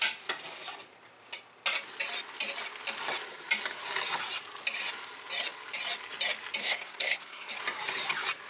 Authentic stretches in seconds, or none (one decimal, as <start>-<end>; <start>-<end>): 0.0-6.6; 7.5-8.5